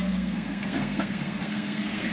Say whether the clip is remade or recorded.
remade